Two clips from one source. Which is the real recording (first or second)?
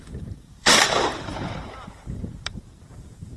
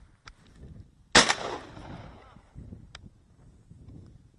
second